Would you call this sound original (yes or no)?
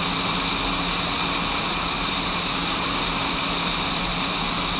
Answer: yes